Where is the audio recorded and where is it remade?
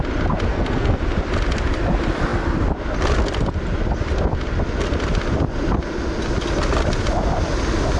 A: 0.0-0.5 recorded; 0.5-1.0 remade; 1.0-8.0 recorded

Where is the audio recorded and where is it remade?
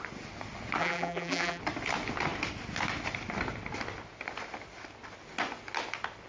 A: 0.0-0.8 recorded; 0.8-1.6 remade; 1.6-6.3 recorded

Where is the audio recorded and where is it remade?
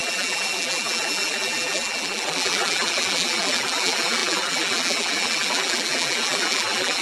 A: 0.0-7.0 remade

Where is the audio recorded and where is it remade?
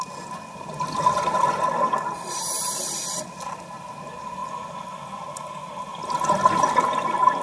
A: 0.0-7.4 recorded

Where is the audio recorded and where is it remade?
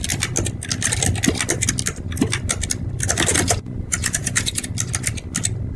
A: 0.0-3.3 recorded; 3.3-4.7 remade; 4.7-5.8 recorded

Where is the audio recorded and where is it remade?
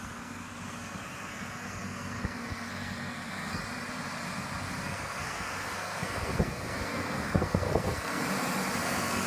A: 0.0-3.6 remade; 3.6-4.8 recorded; 4.8-8.2 remade; 8.2-8.8 recorded; 8.8-9.3 remade